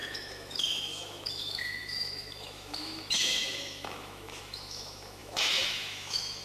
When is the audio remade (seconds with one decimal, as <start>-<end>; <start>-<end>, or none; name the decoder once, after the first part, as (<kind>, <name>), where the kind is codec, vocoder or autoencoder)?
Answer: 0.0-6.4 (autoencoder, DAC-VAE)